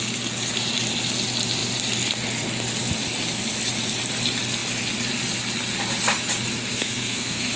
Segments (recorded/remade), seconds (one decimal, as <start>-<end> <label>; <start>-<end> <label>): 0.0-6.7 recorded; 6.7-7.6 remade